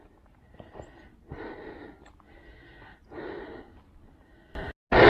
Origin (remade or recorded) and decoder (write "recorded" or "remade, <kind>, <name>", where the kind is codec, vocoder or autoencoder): recorded